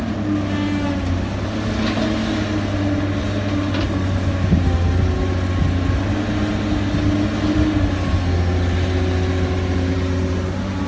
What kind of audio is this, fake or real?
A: real